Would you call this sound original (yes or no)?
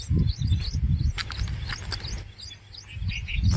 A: yes